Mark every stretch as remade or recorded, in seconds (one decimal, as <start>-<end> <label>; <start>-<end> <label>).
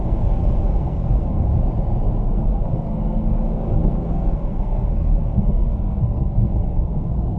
0.0-1.5 remade; 1.5-2.2 recorded; 2.2-7.4 remade